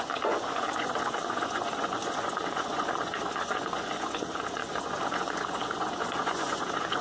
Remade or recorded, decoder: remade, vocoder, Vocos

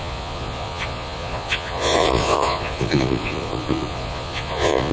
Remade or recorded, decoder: remade, vocoder, Vocos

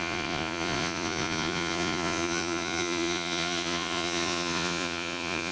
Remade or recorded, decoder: remade, vocoder, Vocos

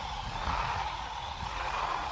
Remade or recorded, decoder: remade, vocoder, Vocos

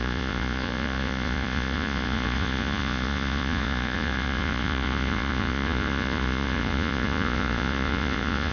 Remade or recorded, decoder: remade, vocoder, Vocos